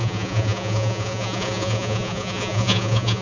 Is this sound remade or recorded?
remade